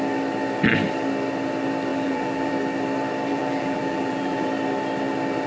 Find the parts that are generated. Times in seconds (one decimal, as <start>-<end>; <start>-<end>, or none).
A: 1.9-2.5; 3.3-4.5

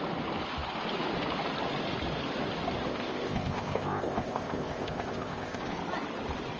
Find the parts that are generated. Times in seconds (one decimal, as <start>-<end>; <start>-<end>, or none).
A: 2.9-5.6

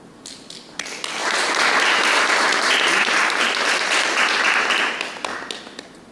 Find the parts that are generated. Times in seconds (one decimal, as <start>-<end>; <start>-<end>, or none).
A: 1.2-4.9

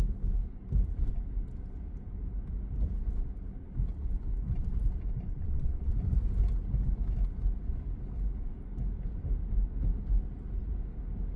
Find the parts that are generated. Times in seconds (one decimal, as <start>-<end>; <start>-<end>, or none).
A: 5.3-5.9

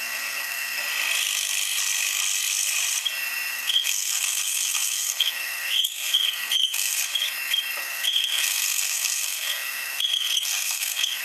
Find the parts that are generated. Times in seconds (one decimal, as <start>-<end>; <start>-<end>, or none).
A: 0.0-0.8; 3.5-7.0; 7.8-11.2